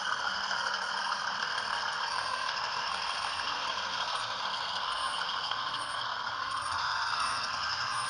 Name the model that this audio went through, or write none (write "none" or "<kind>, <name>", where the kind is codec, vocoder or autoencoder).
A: codec, SNAC